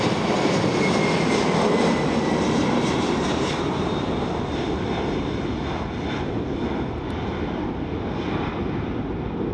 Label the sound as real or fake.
real